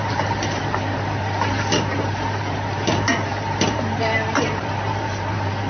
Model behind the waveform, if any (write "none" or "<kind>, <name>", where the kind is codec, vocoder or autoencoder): vocoder, BigVGAN v2